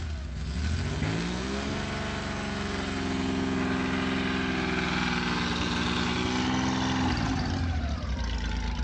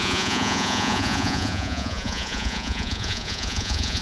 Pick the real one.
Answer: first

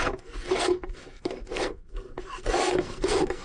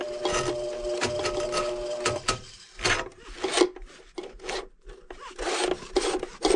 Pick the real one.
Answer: second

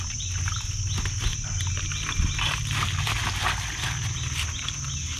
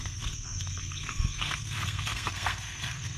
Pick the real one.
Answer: first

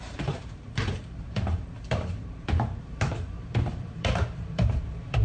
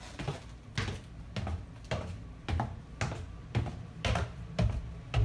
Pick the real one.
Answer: second